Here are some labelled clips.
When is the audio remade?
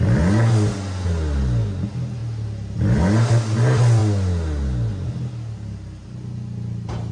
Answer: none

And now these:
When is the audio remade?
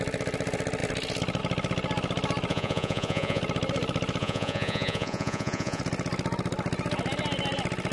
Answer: 2.5-3.4 (vocoder, Vocos); 4.2-5.8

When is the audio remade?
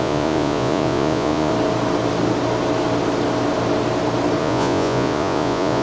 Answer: 0.0-1.5 (vocoder, Vocos); 4.4-5.8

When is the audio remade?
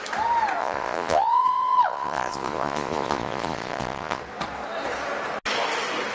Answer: 0.6-4.2 (vocoder, Vocos)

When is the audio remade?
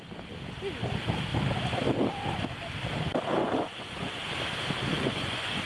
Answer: 3.4-4.3 (vocoder, Vocos); 4.9-5.6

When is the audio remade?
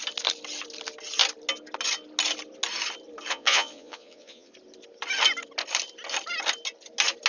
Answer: 3.3-4.5 (vocoder, Vocos)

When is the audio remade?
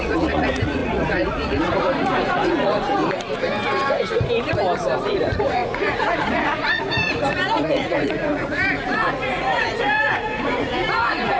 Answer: 0.0-3.0 (vocoder, Vocos); 5.0-11.4